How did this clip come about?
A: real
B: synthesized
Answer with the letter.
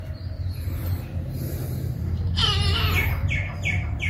A